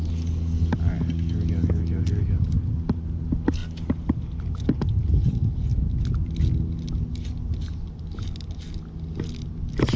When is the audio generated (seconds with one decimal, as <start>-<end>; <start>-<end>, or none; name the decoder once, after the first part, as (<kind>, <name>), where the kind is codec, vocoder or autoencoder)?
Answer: none